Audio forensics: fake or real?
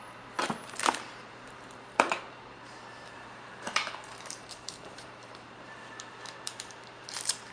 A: fake